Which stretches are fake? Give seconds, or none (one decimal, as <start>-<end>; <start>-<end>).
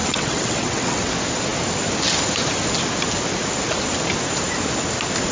0.0-1.1